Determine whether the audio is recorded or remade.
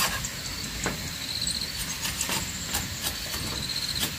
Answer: recorded